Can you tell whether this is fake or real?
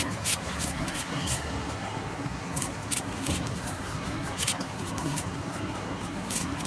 fake